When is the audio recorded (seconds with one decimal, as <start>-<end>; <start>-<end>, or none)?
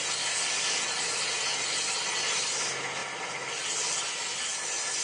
0.0-5.0